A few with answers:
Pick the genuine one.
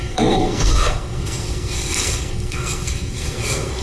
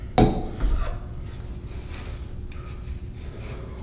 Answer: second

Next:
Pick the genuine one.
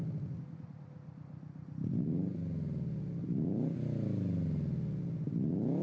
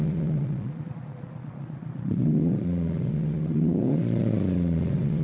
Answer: first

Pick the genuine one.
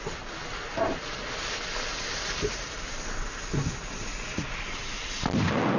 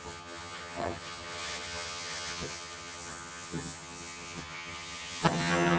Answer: first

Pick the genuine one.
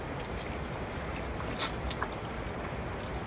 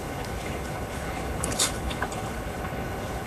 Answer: first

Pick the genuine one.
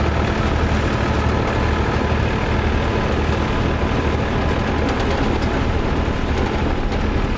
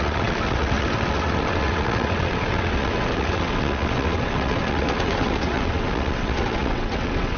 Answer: first